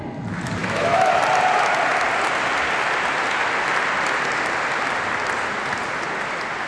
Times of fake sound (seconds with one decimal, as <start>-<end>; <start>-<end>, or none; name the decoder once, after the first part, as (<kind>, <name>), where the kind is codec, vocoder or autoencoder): 0.6-1.2 (autoencoder, DAC-VAE)